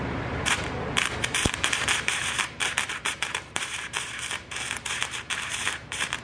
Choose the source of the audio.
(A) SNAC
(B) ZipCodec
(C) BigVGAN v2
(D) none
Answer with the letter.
C